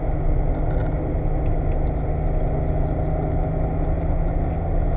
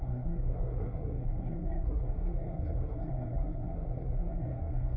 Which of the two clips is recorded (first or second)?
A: first